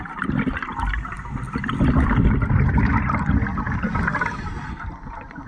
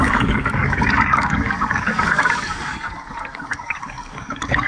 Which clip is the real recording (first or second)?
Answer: first